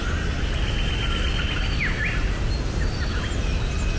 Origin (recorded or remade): recorded